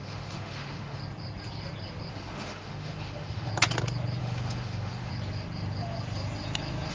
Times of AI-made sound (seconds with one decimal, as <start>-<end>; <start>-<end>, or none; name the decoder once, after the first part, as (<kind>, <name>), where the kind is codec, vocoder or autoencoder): 0.0-1.0 (autoencoder, DAC-VAE); 2.1-3.5; 4.2-5.1